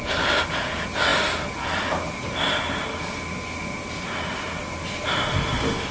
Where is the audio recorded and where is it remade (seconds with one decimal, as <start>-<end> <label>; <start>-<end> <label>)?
0.0-5.9 recorded